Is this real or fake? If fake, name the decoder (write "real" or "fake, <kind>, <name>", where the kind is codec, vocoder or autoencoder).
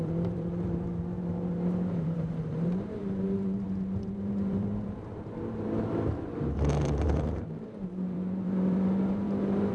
fake, vocoder, BigVGAN v2